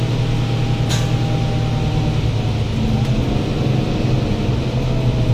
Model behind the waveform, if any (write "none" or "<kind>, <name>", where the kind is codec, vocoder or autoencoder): none